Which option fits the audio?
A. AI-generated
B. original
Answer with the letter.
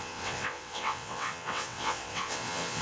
A